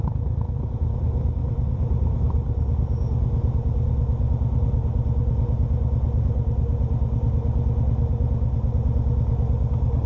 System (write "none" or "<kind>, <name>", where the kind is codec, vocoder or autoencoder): none